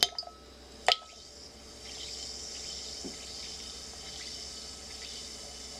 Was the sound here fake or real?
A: real